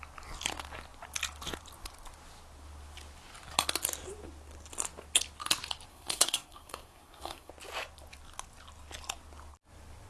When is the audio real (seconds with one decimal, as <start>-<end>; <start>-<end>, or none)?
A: 0.0-5.9; 7.5-10.1